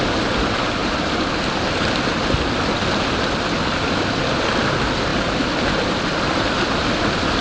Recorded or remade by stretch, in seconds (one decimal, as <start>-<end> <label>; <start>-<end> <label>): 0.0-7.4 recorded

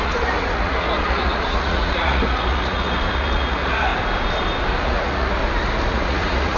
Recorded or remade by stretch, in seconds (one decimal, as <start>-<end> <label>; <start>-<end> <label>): 0.0-3.9 remade; 3.9-4.8 recorded; 4.8-5.4 remade; 5.4-5.9 recorded; 5.9-6.6 remade

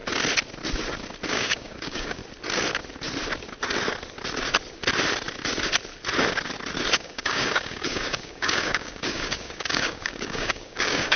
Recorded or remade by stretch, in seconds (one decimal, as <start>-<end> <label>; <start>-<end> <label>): 0.0-1.3 recorded; 1.3-2.2 remade; 2.2-6.9 recorded; 6.9-11.2 remade

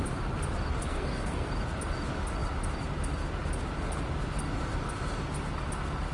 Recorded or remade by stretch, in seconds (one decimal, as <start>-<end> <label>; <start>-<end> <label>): 0.0-0.8 recorded; 0.8-1.5 remade; 1.5-6.1 recorded

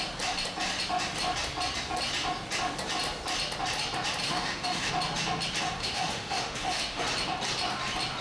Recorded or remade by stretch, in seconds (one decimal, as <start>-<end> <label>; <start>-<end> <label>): 0.0-4.2 recorded; 4.2-4.9 remade; 4.9-5.8 recorded; 5.8-7.0 remade; 7.0-8.2 recorded